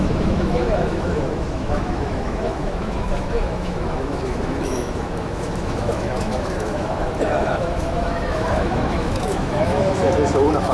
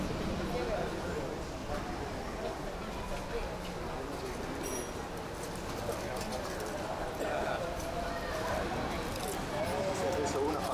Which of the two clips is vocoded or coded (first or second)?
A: first